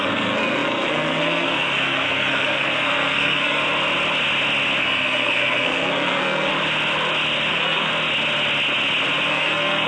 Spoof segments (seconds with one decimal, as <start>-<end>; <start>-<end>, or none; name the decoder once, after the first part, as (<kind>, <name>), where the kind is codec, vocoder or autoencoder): 0.0-3.6 (codec, SNAC); 4.8-6.5; 7.5-7.9; 9.3-9.9